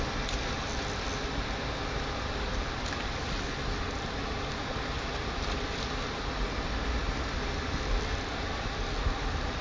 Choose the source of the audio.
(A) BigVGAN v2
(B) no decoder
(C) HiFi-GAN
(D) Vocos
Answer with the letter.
B